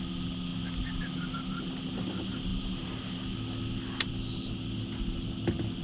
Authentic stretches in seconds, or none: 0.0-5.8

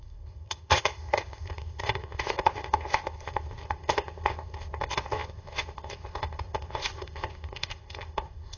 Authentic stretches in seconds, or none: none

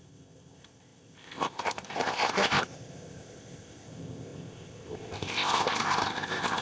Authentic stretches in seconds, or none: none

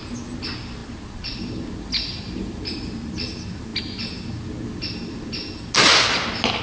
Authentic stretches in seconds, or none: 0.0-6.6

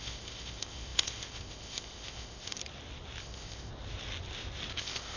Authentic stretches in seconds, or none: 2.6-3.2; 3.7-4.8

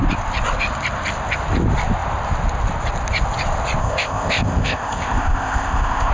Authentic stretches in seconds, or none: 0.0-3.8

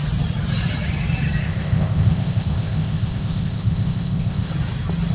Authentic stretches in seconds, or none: 0.0-1.4; 4.5-5.1